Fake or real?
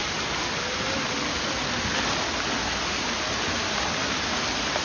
real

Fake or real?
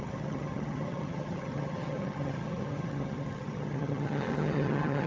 fake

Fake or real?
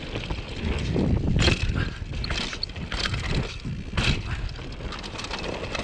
real